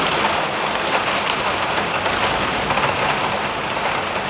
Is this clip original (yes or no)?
yes